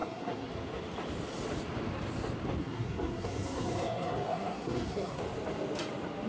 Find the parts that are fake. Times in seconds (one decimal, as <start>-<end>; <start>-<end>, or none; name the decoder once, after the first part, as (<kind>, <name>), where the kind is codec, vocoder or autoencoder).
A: 0.0-0.5 (codec, SNAC); 2.6-5.2

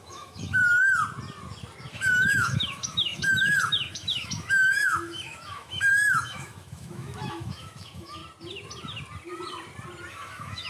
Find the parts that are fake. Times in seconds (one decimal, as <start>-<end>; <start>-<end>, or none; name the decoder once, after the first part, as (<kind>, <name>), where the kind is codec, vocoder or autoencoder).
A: 0.0-0.6 (autoencoder, DAC-VAE); 1.9-8.2; 10.1-10.7

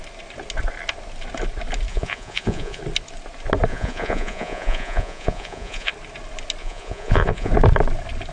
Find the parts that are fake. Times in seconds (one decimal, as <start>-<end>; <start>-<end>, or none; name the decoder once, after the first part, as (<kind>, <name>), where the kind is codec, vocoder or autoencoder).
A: 1.9-2.8 (vocoder, Vocos); 3.7-5.9; 6.6-7.5

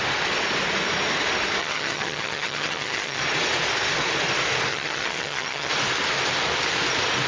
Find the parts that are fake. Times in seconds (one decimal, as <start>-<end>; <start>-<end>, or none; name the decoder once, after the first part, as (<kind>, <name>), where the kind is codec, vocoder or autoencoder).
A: 1.6-3.2 (vocoder, HiFi-GAN); 4.7-5.7